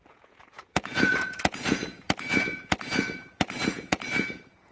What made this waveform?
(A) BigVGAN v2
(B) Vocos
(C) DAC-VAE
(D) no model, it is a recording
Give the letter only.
B